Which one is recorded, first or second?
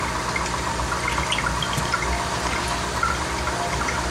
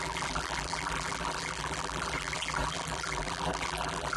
first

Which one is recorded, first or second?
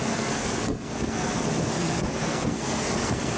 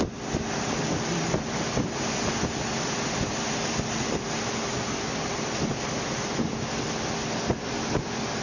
second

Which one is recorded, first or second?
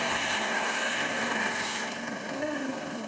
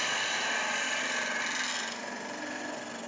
second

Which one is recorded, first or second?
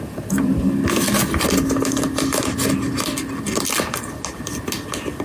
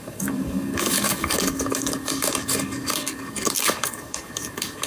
first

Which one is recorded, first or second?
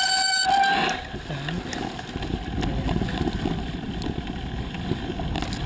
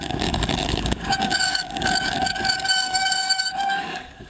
first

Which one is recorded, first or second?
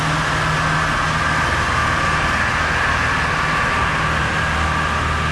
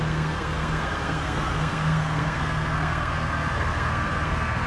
first